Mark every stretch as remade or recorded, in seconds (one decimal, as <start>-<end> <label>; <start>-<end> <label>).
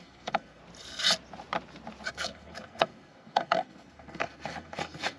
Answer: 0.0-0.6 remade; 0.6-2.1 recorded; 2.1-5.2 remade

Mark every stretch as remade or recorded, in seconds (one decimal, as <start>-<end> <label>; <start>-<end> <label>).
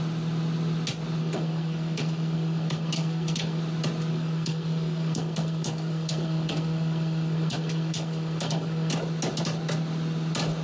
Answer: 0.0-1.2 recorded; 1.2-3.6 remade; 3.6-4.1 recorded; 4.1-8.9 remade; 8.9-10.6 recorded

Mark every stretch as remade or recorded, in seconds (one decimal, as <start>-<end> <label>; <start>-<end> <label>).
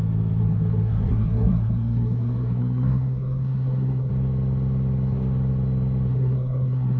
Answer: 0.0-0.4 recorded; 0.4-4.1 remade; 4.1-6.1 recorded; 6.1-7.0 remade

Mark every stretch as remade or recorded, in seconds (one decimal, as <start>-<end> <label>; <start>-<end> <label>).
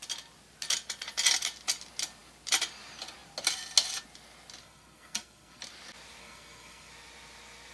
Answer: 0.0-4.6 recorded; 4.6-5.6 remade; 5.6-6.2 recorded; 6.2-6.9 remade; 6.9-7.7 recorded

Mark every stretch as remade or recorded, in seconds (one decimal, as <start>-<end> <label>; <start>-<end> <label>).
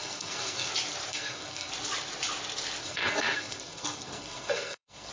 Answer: 0.0-0.7 remade; 0.7-1.1 recorded; 1.1-1.7 remade; 1.7-2.8 recorded; 2.8-5.1 remade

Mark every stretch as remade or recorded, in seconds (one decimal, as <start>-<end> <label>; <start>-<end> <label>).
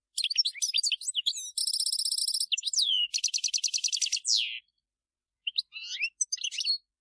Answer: 0.0-7.0 recorded